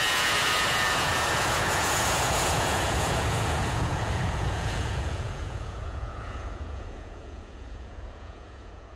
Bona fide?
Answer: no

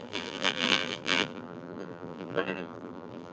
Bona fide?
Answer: no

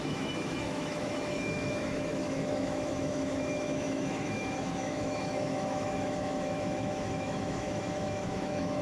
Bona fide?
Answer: no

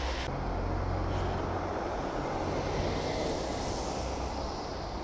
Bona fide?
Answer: yes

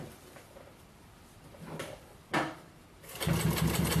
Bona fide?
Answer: no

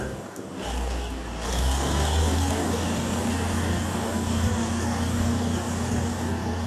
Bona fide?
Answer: no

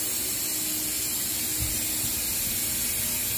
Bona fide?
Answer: yes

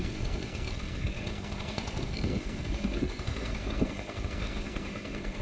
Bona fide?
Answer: no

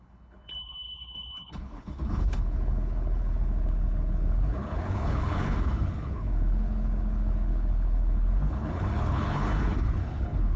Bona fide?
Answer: no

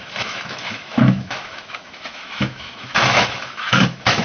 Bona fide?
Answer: no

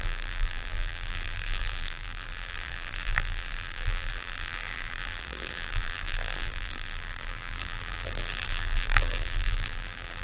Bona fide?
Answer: no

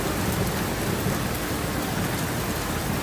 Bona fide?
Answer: yes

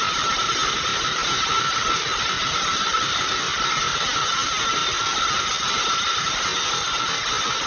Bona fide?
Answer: yes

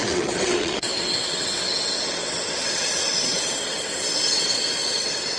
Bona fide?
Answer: no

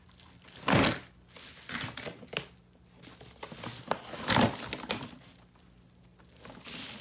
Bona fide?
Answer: yes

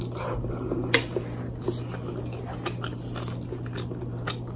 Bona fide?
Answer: yes